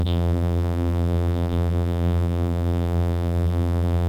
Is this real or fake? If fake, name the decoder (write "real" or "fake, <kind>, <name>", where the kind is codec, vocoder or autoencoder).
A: fake, vocoder, BigVGAN v2